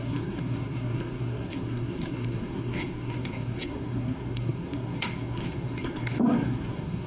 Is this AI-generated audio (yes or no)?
yes